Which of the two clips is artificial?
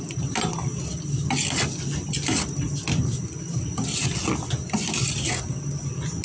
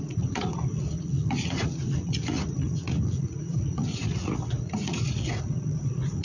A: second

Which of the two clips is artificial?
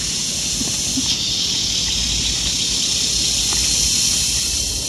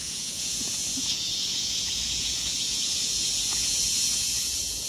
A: second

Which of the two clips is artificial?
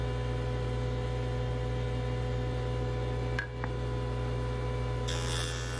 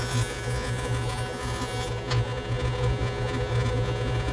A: second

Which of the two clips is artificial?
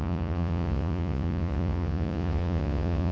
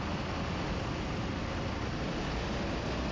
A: first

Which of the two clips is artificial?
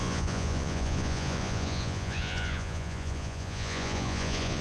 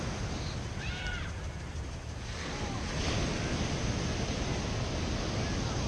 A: first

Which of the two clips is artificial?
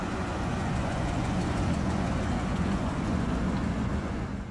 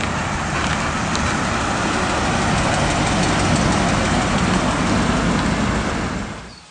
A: first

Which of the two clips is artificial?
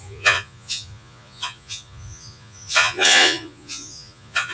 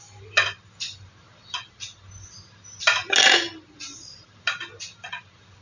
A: first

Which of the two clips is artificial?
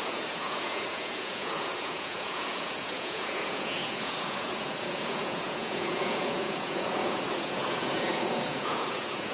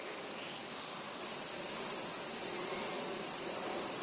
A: first